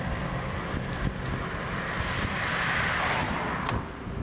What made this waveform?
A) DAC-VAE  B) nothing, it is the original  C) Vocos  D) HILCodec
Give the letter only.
B